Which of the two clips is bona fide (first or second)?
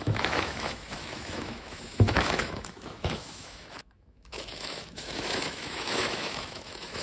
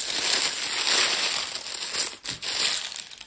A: second